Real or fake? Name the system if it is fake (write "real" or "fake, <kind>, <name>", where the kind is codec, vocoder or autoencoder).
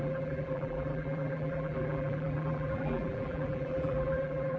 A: fake, vocoder, BigVGAN v2